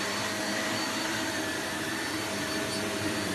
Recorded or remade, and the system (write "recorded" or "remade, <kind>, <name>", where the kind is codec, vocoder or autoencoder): remade, vocoder, BigVGAN v2